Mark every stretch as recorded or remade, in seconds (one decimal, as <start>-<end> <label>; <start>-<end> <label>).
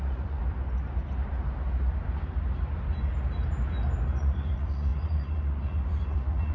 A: 0.0-0.4 remade; 0.4-4.2 recorded; 4.2-6.5 remade